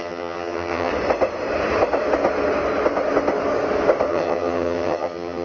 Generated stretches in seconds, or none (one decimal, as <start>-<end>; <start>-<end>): 0.0-0.9; 4.1-5.4